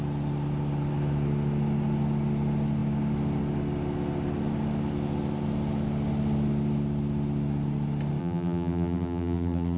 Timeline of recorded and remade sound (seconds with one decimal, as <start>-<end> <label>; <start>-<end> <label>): 0.0-8.2 recorded; 8.2-9.8 remade